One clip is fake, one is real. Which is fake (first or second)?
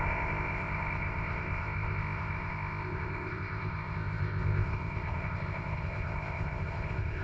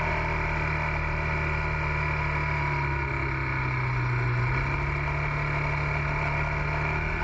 first